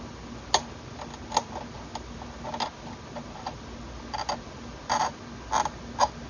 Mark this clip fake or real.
real